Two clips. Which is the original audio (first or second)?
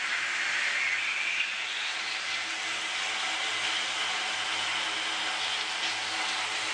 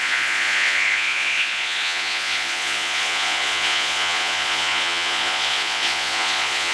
first